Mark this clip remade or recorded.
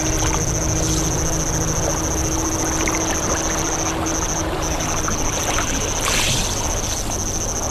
recorded